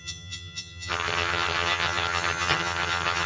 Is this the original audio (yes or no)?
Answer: no